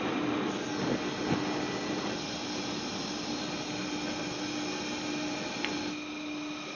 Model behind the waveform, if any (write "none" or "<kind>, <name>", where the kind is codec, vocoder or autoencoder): none